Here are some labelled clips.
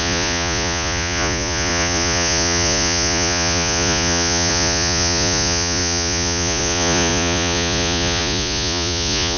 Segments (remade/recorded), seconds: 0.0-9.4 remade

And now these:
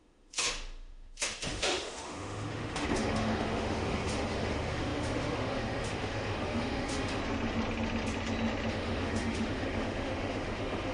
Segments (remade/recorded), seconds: 0.0-7.2 remade; 7.2-8.7 recorded; 8.7-10.9 remade

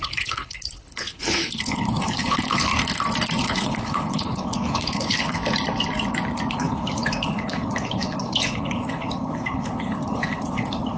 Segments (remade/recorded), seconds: 0.0-2.7 remade; 2.7-3.4 recorded; 3.4-5.4 remade; 5.4-6.5 recorded; 6.5-11.0 remade

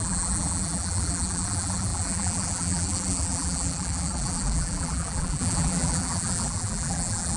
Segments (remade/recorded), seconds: 0.0-7.4 remade

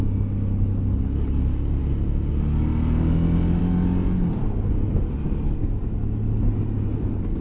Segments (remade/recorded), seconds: 0.0-7.4 recorded